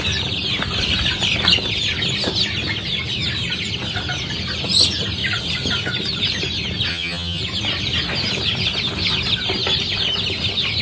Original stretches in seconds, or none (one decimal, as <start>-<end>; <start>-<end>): 0.0-6.9; 7.4-10.8

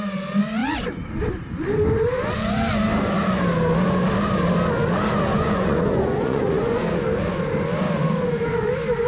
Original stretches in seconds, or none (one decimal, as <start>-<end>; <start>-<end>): 0.0-5.3; 6.8-9.1

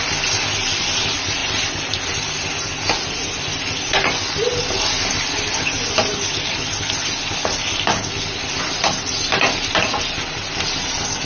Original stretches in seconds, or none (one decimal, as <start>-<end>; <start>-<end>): 0.0-11.3

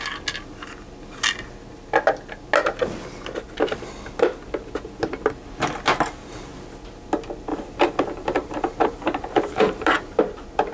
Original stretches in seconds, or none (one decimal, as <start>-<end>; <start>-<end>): 0.0-7.5; 10.2-10.7

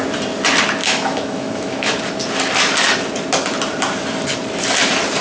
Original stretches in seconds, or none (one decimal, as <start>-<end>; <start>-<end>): 0.0-0.8; 2.0-5.2

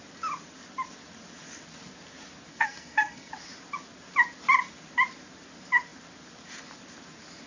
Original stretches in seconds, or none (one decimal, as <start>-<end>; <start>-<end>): 0.0-2.5; 3.3-7.5

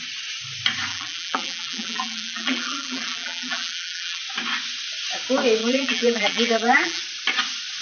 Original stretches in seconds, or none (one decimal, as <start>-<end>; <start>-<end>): 0.0-0.9; 4.2-5.6; 7.0-7.8

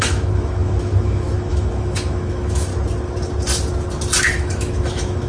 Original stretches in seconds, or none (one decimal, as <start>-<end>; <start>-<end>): 2.7-4.2